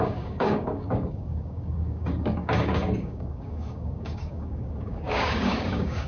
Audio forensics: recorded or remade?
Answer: remade